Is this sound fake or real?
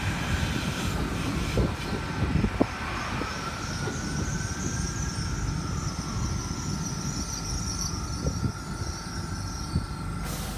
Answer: real